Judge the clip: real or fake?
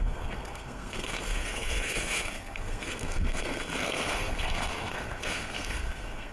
fake